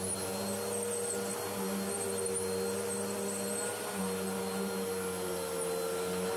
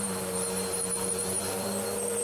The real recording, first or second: first